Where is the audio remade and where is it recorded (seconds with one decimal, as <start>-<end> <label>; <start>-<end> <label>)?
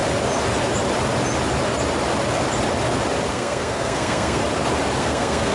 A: 0.0-3.3 recorded; 3.3-4.4 remade; 4.4-5.0 recorded; 5.0-5.5 remade